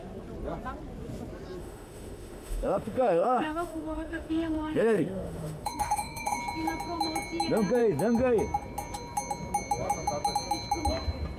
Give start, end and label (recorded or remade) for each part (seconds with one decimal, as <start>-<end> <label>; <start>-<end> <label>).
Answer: 0.0-1.6 recorded; 1.6-6.4 remade; 6.4-11.4 recorded